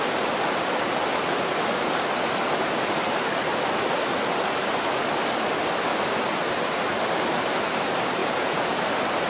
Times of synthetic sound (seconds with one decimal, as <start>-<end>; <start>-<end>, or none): 8.2-8.8